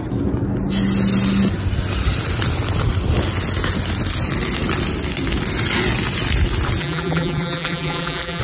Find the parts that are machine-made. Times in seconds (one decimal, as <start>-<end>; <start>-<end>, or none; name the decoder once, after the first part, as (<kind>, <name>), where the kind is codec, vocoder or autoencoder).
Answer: 6.8-8.4 (vocoder, BigVGAN v2)